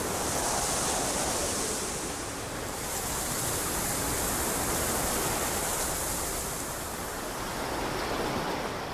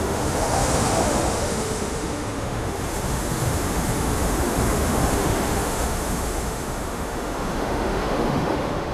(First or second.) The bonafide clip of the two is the first